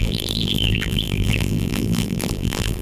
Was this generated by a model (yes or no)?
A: yes